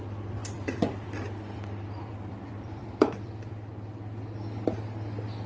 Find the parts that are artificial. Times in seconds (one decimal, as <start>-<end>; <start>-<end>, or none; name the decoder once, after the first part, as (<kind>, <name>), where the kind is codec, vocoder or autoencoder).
0.4-3.7 (vocoder, BigVGAN v2)